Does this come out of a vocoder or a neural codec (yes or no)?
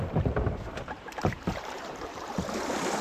yes